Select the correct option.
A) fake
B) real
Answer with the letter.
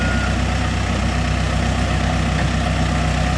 B